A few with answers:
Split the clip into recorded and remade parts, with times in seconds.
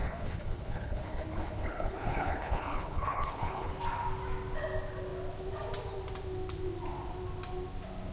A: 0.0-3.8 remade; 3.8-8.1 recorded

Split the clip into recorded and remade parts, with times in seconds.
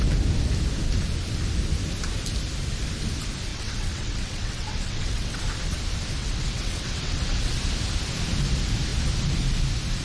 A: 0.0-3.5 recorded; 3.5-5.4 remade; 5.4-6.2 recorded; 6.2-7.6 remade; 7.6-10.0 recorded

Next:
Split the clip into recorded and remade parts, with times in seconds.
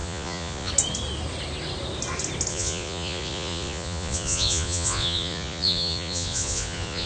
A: 0.0-0.7 remade; 0.7-2.5 recorded; 2.5-7.1 remade